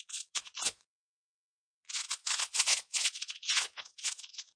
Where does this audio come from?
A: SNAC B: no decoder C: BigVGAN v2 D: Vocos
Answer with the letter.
D